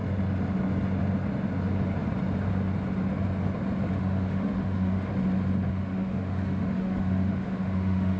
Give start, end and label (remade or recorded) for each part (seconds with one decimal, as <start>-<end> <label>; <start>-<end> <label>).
0.0-4.0 recorded; 4.0-5.1 remade; 5.1-5.7 recorded; 5.7-8.2 remade